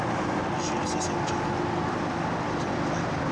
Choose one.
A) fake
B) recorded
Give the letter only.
A